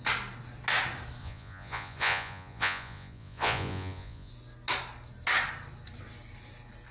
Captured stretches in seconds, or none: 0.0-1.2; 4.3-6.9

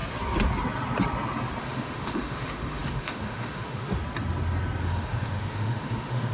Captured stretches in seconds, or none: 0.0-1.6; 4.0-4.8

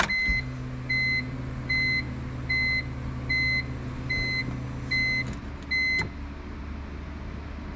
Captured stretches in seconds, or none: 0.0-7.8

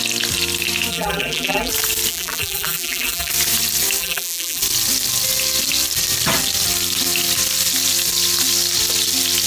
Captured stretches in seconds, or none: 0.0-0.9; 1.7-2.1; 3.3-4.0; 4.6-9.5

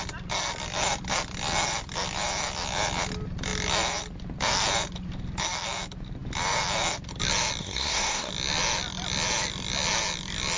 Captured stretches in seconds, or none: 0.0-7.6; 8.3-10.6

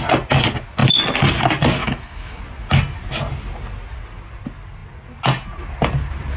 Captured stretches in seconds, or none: 0.0-1.8; 2.4-6.4